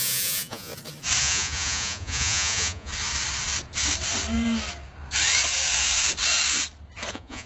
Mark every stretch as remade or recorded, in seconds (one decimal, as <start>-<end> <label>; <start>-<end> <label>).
0.0-0.7 remade; 0.7-1.2 recorded; 1.2-2.9 remade; 2.9-7.1 recorded; 7.1-7.5 remade